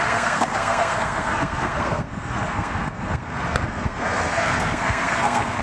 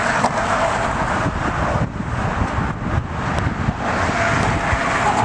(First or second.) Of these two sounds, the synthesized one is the first